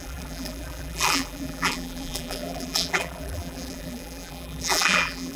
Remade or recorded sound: remade